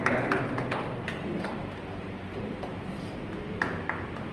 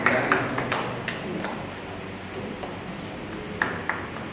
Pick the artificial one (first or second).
first